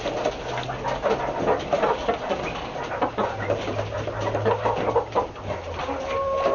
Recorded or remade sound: recorded